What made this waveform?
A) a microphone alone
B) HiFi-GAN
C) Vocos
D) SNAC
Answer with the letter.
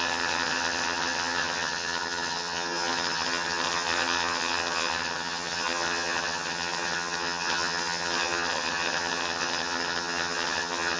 B